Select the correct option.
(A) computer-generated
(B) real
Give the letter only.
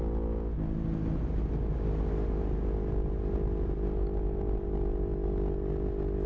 B